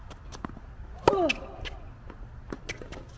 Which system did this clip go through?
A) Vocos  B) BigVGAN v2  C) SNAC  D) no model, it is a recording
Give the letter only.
D